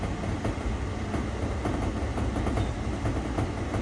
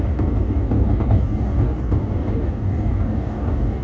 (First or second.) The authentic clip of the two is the first